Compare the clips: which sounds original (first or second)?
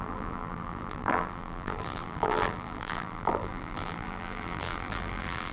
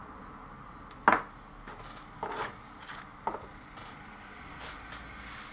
second